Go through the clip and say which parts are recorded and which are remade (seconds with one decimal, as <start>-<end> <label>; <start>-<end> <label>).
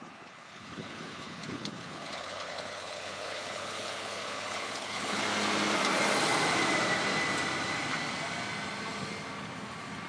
0.0-5.2 remade; 5.2-10.1 recorded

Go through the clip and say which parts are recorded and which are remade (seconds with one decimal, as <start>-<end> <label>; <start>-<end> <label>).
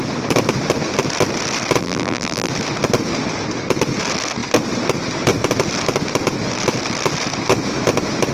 0.0-1.8 recorded; 1.8-2.5 remade; 2.5-8.3 recorded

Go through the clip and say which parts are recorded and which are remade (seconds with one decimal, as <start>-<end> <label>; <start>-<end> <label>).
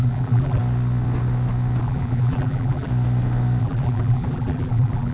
0.0-0.6 remade; 0.6-1.8 recorded; 1.8-2.9 remade; 2.9-3.6 recorded; 3.6-5.1 remade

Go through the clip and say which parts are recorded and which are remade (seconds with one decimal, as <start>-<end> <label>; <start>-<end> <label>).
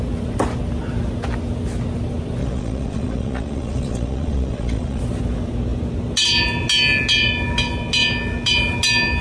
0.0-2.4 recorded; 2.4-5.0 remade; 5.0-9.2 recorded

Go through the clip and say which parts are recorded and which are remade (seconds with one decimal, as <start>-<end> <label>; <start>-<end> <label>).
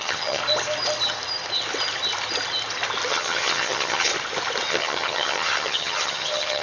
0.0-0.4 remade; 0.4-3.1 recorded; 3.1-4.1 remade; 4.1-4.7 recorded; 4.7-6.6 remade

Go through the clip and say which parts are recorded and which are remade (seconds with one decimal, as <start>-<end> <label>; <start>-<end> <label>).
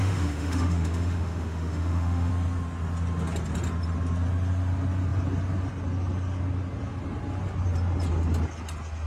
0.0-2.3 remade; 2.3-9.1 recorded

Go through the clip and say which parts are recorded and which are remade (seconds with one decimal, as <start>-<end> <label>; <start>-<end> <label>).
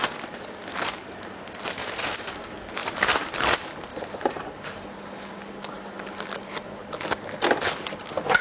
0.0-0.7 recorded; 0.7-1.4 remade; 1.4-1.8 recorded; 1.8-2.3 remade; 2.3-2.8 recorded; 2.8-3.5 remade; 3.5-3.9 recorded; 3.9-4.7 remade; 4.7-8.4 recorded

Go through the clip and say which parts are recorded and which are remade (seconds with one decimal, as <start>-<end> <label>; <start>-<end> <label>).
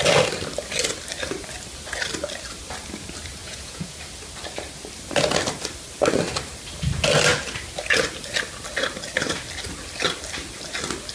0.0-3.4 recorded; 3.4-4.0 remade; 4.0-11.1 recorded